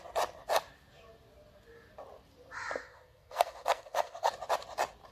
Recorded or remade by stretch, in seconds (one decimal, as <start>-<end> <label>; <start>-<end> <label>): 0.0-2.8 recorded; 2.8-4.3 remade; 4.3-5.1 recorded

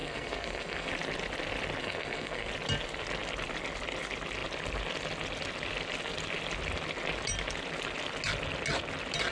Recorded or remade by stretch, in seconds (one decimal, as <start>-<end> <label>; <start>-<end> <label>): 0.0-0.9 remade; 0.9-1.8 recorded; 1.8-2.5 remade; 2.5-9.3 recorded

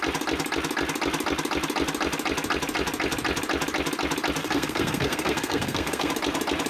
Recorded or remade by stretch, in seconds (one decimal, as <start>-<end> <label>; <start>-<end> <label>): 0.0-4.4 recorded; 4.4-6.1 remade; 6.1-6.7 recorded

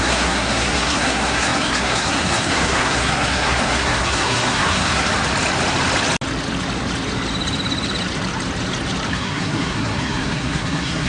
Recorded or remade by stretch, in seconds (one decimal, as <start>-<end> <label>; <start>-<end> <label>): 0.0-5.1 remade; 5.1-9.1 recorded; 9.1-11.1 remade

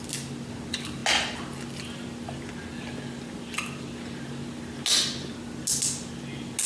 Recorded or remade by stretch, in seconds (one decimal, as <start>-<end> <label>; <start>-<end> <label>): 0.0-6.7 recorded

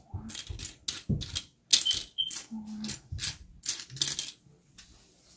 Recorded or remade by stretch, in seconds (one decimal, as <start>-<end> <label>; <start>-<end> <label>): 0.0-5.4 recorded